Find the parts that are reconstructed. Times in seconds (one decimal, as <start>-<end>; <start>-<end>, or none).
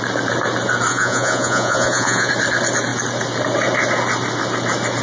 0.9-2.3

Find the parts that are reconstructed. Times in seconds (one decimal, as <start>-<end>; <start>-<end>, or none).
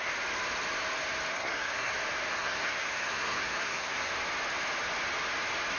1.3-1.9; 2.3-4.1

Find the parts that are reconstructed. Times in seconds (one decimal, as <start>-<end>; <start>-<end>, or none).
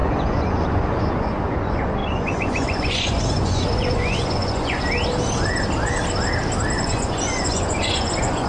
0.0-4.8; 6.8-8.5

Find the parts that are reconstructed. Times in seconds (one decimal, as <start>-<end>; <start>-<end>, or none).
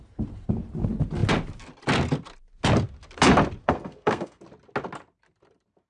3.6-4.4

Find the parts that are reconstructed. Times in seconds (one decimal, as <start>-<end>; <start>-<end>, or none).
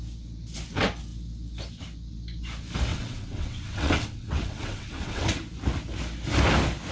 2.9-5.4